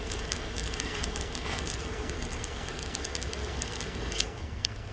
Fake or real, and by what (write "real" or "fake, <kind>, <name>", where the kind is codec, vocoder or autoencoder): fake, codec, SNAC